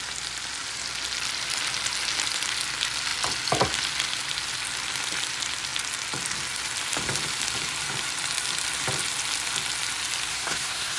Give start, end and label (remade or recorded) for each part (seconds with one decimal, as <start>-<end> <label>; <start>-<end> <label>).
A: 0.0-10.3 recorded; 10.3-11.0 remade